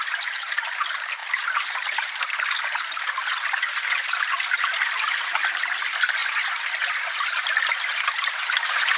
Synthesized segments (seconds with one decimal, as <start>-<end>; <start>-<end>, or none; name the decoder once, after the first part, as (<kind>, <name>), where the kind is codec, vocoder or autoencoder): none